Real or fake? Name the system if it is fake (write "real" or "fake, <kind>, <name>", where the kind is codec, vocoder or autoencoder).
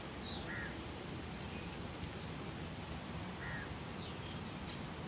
real